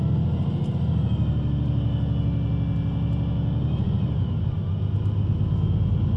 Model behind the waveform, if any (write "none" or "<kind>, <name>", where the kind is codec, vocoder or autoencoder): none